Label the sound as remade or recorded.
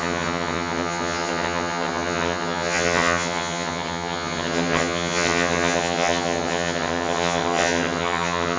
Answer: remade